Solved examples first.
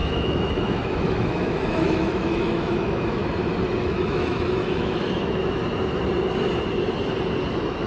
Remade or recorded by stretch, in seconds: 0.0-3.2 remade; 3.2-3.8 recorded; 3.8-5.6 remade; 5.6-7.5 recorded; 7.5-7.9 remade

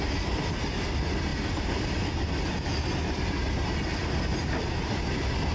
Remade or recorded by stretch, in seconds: 0.0-5.5 recorded

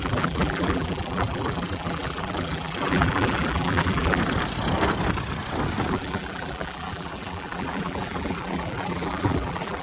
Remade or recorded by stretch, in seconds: 0.0-4.2 remade; 4.2-5.9 recorded; 5.9-9.8 remade

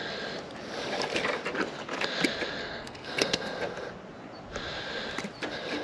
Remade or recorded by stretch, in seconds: 0.0-2.6 recorded; 2.6-3.6 remade; 3.6-5.8 recorded

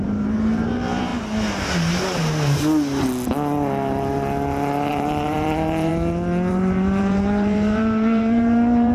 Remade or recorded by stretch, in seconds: 0.0-1.1 remade; 1.1-4.9 recorded; 4.9-5.9 remade; 5.9-6.5 recorded; 6.5-8.9 remade

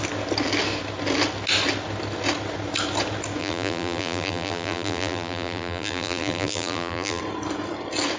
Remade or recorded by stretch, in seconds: 0.0-3.4 recorded; 3.4-7.2 remade; 7.2-8.2 recorded

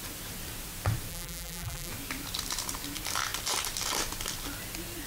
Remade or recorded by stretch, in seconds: 0.0-1.1 recorded; 1.1-1.9 remade; 1.9-5.1 recorded